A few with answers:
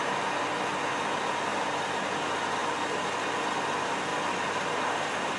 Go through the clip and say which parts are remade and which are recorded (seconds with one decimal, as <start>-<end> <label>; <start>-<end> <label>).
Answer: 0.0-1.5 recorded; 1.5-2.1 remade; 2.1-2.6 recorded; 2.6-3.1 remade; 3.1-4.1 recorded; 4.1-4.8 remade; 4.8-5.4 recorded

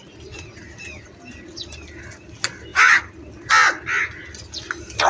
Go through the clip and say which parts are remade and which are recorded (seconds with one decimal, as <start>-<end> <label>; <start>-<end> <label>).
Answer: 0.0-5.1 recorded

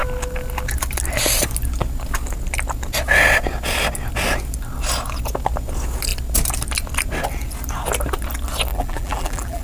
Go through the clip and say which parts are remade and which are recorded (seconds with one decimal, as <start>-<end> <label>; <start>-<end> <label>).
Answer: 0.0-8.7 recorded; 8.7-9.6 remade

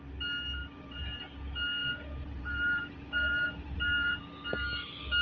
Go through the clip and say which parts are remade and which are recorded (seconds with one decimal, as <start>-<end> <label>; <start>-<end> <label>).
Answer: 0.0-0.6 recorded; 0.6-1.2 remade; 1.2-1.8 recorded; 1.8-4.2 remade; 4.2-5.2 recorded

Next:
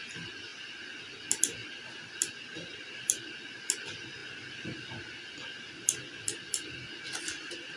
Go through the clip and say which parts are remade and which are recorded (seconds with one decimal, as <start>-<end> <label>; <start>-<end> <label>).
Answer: 0.0-1.6 recorded; 1.6-3.2 remade; 3.2-4.2 recorded; 4.2-4.9 remade; 4.9-7.8 recorded

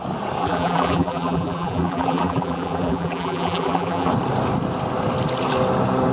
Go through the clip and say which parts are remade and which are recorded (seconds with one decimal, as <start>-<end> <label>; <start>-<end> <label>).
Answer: 0.0-0.4 recorded; 0.4-4.1 remade; 4.1-6.1 recorded